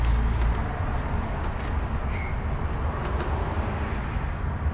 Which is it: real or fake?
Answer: real